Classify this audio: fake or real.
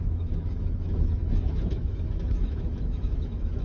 fake